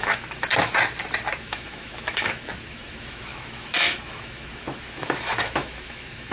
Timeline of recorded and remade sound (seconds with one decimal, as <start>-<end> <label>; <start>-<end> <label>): 0.0-0.5 remade; 0.5-1.4 recorded; 1.4-6.3 remade